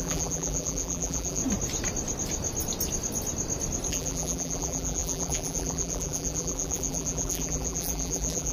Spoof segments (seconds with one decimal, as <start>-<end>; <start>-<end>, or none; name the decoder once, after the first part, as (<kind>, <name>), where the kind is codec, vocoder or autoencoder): 0.0-1.4 (vocoder, BigVGAN v2); 3.9-8.5